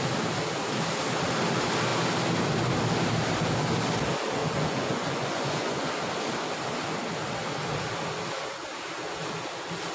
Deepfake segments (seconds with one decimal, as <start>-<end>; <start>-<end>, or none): 4.4-5.9